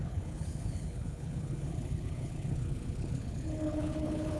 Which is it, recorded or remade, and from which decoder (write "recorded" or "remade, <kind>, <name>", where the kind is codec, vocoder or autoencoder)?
remade, codec, HILCodec